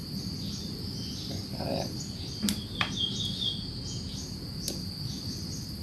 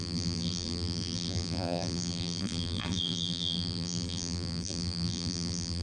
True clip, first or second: first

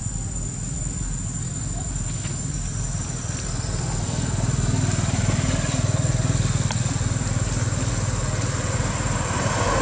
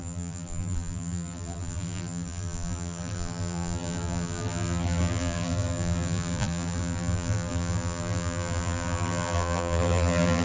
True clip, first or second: first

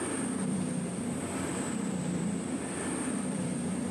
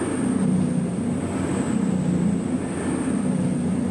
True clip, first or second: second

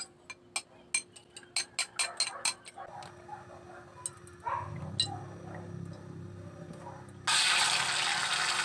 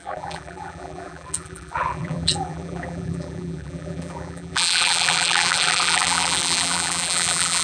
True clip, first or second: first